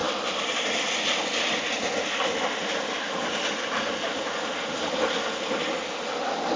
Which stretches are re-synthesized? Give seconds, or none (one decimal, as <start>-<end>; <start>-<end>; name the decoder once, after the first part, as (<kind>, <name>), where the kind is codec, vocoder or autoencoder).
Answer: none